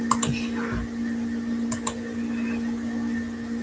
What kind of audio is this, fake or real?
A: real